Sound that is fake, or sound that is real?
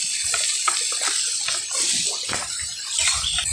real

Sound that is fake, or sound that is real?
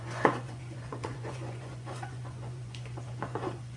fake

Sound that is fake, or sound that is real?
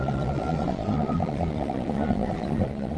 fake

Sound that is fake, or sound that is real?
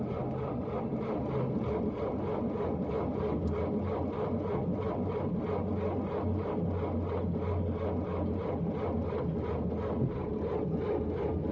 real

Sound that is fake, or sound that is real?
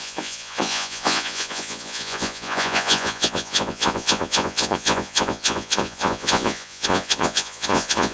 fake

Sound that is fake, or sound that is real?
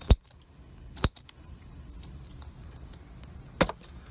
real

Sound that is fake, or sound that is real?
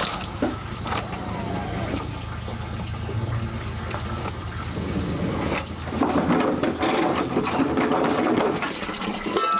real